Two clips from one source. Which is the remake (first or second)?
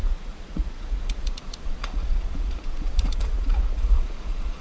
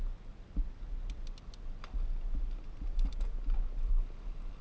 first